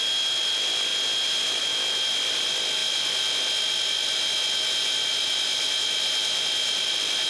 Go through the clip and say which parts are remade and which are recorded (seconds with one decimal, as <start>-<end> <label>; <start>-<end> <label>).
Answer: 0.0-7.3 recorded